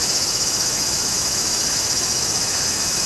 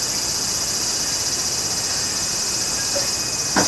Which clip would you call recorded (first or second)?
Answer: second